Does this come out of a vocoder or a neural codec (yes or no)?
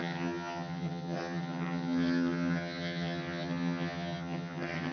yes